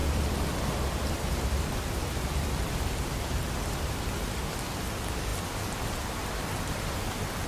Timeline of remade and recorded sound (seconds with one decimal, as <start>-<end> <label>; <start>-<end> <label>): 0.0-4.1 remade; 4.1-7.5 recorded